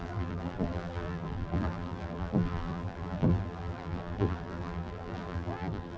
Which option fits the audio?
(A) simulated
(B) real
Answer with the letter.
A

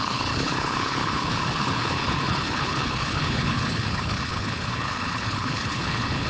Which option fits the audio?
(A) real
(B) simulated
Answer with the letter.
B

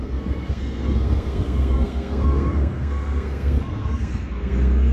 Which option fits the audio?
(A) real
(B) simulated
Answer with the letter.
B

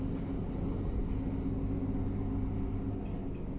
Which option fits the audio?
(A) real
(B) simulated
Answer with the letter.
A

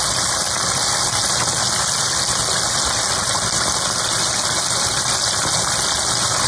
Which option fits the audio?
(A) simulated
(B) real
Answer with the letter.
B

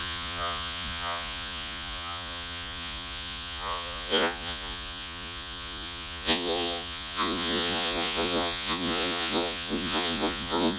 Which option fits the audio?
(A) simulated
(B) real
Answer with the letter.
A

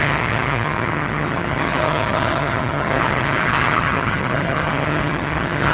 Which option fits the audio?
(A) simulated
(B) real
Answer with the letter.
A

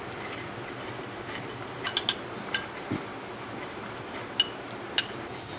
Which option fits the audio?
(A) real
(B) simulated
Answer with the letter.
A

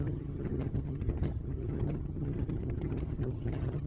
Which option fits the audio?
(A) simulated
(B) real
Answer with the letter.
A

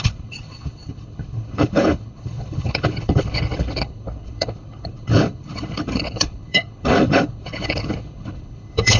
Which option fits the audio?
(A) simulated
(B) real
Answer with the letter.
A